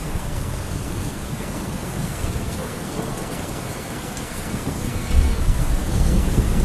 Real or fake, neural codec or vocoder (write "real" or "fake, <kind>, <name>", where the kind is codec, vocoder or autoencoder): fake, codec, SNAC